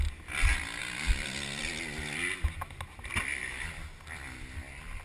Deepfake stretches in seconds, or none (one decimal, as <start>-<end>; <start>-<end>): none